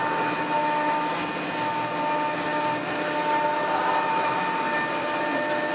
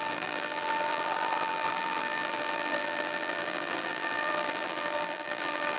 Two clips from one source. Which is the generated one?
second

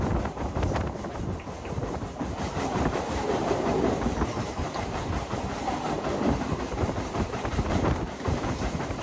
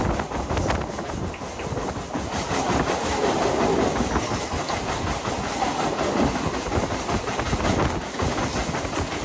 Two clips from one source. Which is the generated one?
first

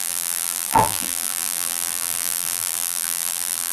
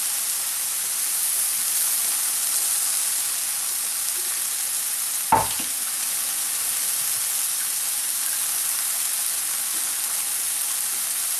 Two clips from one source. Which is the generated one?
first